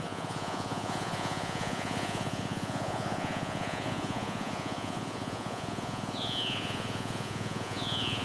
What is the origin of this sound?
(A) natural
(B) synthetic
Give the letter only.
B